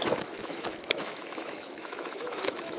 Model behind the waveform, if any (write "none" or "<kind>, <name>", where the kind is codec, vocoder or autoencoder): autoencoder, DAC-VAE